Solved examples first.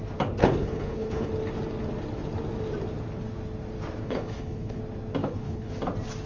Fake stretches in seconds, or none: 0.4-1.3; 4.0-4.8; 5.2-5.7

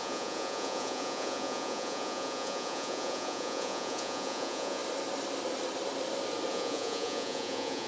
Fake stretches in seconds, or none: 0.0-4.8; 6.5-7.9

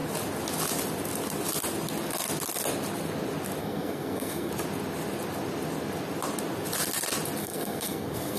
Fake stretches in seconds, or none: 3.6-4.5; 7.4-8.4

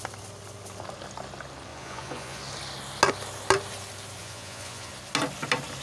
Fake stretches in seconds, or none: 1.7-2.4; 4.2-4.9

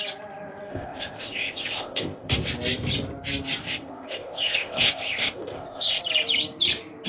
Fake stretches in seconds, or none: 0.7-2.5; 3.6-6.0

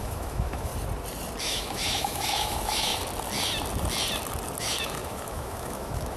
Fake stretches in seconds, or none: 0.0-0.7; 1.4-2.9; 4.6-6.2